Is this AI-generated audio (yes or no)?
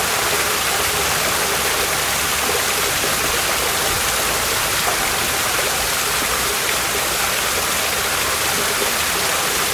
no